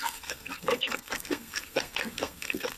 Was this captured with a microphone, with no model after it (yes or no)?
no